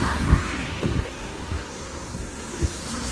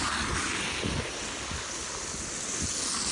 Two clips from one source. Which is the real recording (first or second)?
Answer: second